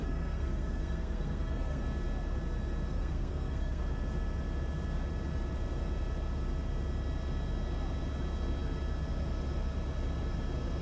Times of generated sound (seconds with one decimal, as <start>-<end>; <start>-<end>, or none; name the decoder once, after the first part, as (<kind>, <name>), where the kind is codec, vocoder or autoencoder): 0.0-1.8 (codec, SNAC); 2.9-3.8